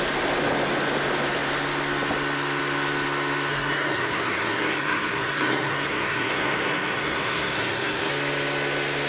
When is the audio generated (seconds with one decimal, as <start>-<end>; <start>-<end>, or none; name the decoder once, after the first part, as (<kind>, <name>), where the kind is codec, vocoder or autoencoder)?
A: 3.5-8.1 (codec, SNAC)